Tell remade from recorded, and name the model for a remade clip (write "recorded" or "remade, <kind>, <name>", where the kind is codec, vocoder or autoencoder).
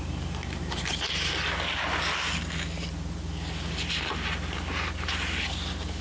recorded